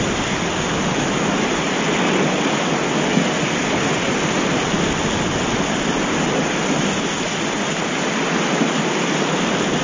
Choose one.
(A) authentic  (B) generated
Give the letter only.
A